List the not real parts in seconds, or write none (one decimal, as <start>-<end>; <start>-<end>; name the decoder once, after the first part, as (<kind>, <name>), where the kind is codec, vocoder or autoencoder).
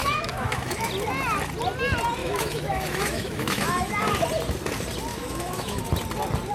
0.0-0.9 (autoencoder, DAC-VAE); 2.2-3.9; 5.1-5.8